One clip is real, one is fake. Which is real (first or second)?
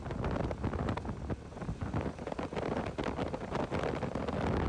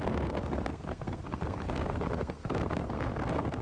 first